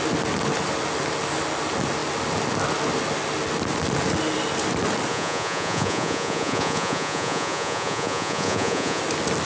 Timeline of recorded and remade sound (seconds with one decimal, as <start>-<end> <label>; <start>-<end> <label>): 0.0-5.1 recorded; 5.1-9.0 remade; 9.0-9.4 recorded